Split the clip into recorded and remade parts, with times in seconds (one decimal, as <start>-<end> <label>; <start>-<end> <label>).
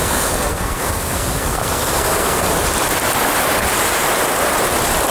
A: 0.0-2.5 remade; 2.5-5.1 recorded